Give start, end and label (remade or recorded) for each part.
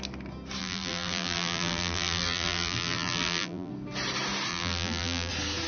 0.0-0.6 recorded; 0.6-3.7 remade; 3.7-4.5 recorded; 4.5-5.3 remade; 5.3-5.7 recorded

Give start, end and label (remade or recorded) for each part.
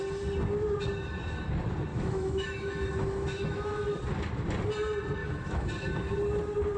0.0-1.9 recorded; 1.9-4.0 remade; 4.0-5.2 recorded; 5.2-5.7 remade; 5.7-6.8 recorded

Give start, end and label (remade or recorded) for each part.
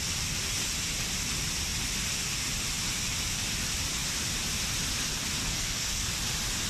0.0-5.4 recorded; 5.4-6.1 remade; 6.1-6.7 recorded